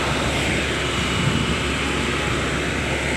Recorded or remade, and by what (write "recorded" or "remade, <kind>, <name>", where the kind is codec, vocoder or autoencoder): recorded